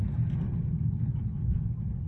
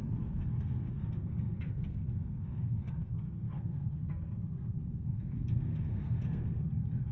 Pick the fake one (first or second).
second